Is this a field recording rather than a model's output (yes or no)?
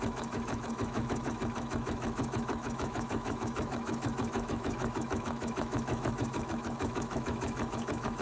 no